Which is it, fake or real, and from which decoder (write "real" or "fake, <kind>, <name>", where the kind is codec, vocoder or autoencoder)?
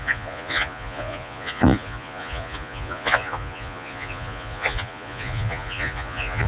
fake, vocoder, Vocos